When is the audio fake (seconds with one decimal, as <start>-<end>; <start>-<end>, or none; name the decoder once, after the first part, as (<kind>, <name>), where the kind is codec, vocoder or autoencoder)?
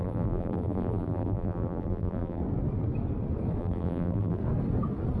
0.0-2.4 (vocoder, BigVGAN v2); 3.6-4.4